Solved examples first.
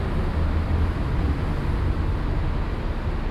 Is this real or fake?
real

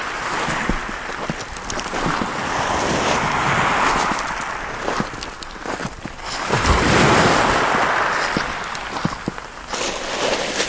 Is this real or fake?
real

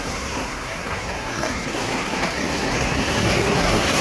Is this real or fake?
fake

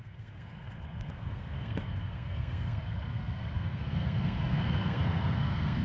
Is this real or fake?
fake